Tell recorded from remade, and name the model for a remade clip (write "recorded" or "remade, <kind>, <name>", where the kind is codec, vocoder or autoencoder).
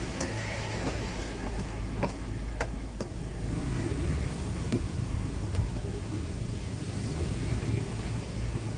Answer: remade, codec, SNAC